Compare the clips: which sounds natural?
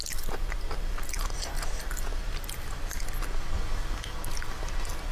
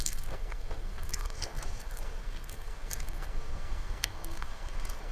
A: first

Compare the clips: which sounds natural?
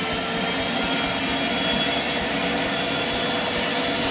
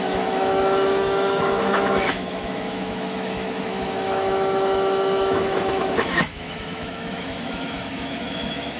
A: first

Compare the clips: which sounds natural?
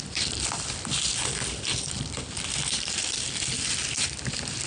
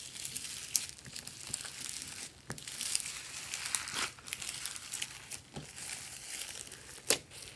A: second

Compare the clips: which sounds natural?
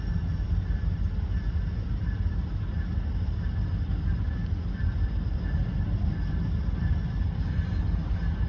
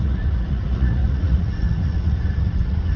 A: first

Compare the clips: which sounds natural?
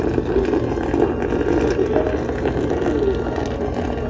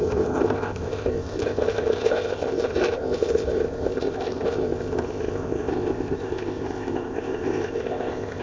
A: first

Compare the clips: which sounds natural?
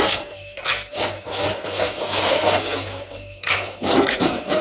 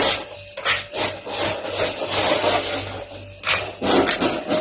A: second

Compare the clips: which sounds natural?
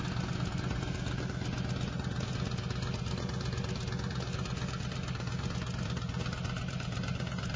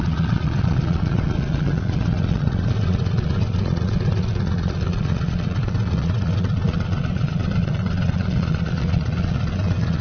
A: first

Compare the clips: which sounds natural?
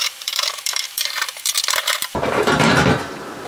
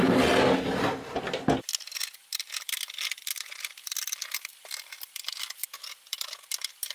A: second